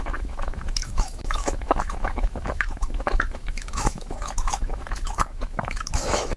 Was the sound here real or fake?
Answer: fake